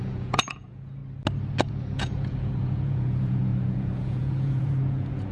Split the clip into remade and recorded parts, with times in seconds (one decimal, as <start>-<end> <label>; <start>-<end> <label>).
0.0-1.0 remade; 1.0-1.7 recorded; 1.7-5.3 remade